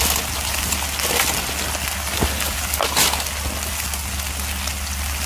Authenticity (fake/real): real